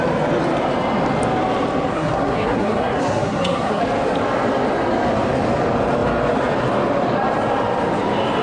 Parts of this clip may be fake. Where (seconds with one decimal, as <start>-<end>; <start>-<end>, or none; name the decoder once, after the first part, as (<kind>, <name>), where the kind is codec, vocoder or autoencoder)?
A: 1.9-3.8 (codec, SNAC)